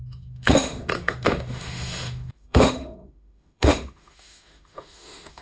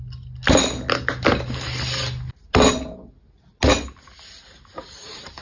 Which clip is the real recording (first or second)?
second